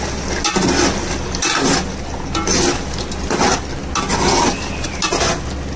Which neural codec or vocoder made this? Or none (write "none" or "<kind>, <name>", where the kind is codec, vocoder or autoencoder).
none